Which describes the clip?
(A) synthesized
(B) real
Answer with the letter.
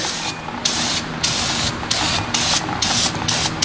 B